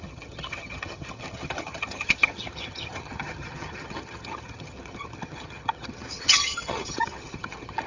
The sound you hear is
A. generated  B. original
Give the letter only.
A